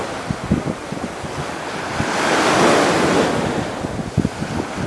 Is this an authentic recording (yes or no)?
yes